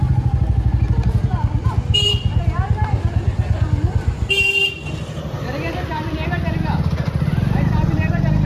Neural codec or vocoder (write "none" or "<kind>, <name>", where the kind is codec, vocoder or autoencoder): none